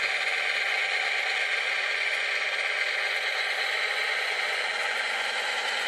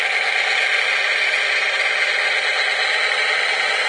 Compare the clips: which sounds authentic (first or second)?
second